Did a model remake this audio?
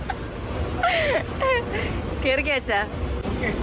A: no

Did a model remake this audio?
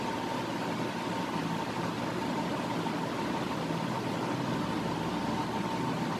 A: no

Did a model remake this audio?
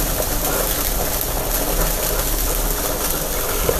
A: no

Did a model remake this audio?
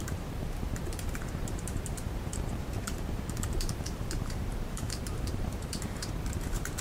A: yes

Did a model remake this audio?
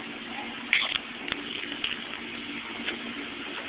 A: no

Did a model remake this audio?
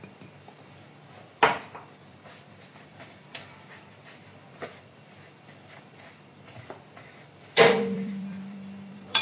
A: yes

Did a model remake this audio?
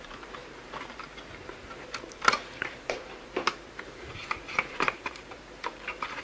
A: yes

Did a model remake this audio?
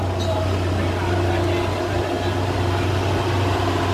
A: no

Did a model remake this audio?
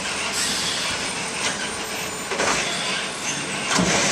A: no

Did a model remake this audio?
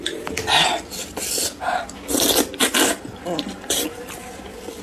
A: yes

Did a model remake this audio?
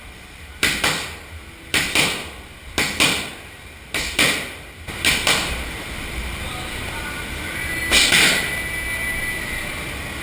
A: no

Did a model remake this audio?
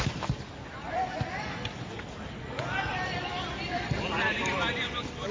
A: yes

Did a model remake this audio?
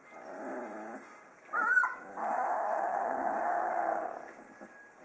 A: yes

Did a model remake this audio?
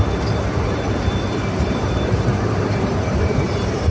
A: yes